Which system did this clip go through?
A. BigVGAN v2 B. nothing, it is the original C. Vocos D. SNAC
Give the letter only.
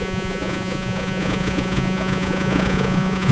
C